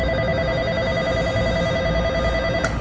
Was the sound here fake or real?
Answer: real